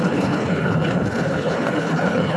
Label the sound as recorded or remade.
remade